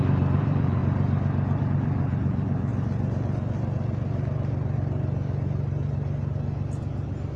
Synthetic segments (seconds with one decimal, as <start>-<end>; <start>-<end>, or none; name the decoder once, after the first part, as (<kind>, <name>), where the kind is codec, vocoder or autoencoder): 0.0-0.8 (vocoder, BigVGAN v2); 1.6-2.7